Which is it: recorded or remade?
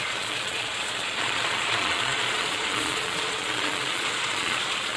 remade